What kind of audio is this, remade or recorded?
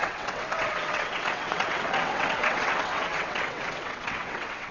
remade